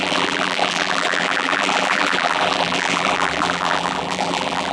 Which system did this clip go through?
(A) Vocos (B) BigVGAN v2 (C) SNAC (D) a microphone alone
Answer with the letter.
B